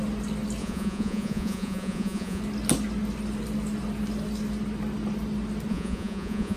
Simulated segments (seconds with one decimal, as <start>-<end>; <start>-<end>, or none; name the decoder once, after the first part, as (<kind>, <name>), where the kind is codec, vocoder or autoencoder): 0.6-2.4 (vocoder, Vocos); 5.7-6.6